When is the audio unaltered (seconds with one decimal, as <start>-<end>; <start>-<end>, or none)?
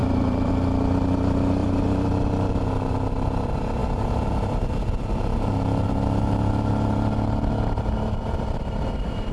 0.5-1.6; 2.1-9.3